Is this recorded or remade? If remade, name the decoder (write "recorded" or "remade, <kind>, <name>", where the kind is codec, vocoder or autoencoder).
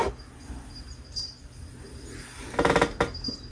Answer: recorded